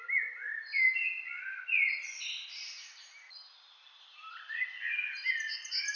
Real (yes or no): yes